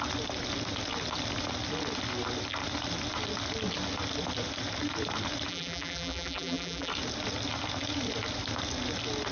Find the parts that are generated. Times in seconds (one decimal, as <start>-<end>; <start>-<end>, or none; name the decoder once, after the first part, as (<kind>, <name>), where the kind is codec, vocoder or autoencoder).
5.5-6.9 (vocoder, BigVGAN v2)